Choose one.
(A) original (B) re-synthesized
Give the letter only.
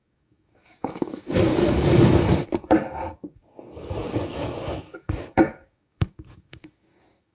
B